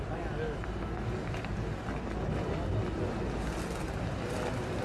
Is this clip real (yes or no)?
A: yes